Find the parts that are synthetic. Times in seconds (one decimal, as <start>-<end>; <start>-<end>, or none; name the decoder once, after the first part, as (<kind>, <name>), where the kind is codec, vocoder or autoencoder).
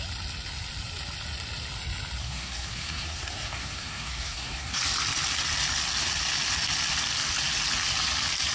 2.2-4.8 (codec, SNAC)